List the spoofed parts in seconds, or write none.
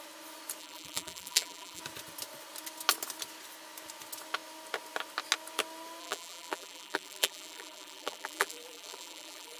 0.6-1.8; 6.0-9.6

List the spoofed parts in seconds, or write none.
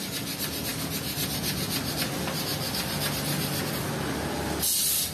none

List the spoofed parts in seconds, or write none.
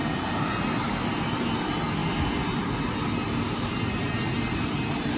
none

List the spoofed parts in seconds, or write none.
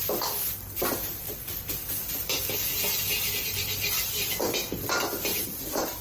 5.3-6.0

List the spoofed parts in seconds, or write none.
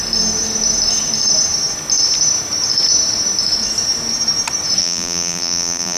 4.8-6.0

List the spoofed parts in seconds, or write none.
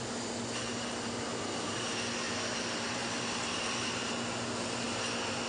none